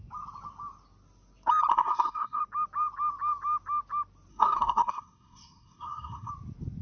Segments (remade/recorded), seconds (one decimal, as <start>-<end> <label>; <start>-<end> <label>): 0.0-1.7 recorded; 1.7-2.4 remade; 2.4-4.3 recorded; 4.3-6.3 remade; 6.3-6.8 recorded